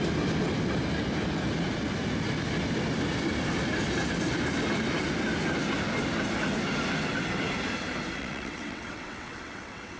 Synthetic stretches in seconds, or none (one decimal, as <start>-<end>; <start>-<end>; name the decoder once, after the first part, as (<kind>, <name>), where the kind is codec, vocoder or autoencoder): 8.2-10.0 (vocoder, WaveNeXt)

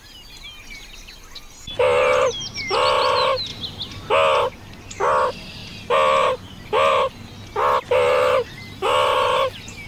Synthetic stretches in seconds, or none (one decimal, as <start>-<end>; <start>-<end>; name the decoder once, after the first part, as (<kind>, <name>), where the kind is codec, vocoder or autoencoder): none

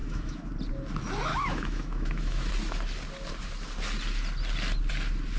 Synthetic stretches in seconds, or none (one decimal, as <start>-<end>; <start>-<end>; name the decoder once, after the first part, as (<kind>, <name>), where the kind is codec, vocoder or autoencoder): 0.0-0.5 (autoencoder, DAC-VAE); 1.3-2.5